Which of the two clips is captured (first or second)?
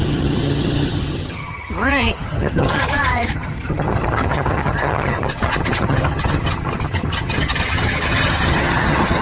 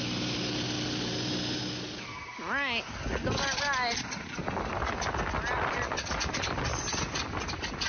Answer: second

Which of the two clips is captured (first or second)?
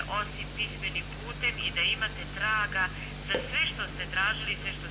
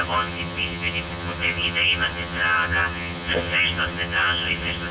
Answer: first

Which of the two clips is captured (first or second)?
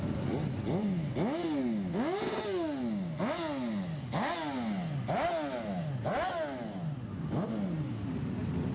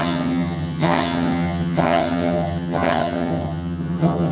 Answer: first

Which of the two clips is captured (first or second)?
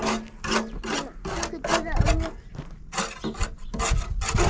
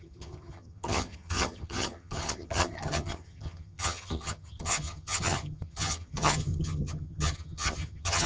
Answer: first